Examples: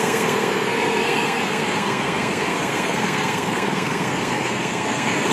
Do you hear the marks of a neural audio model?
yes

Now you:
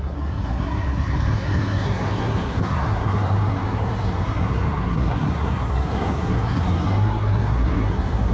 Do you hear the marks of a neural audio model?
yes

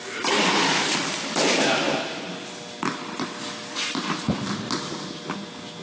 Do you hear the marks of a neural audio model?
no